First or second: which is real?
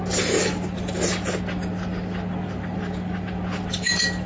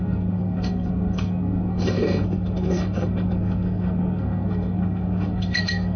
first